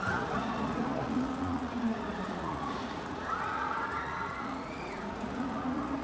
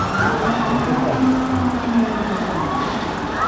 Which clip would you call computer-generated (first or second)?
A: first